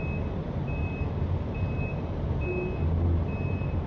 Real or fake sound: real